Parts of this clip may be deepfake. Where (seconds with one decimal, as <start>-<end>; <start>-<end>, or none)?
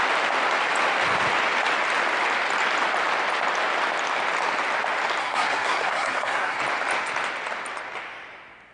5.2-6.6